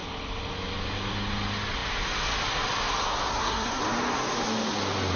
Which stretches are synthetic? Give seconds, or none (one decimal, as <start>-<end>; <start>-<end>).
3.3-3.8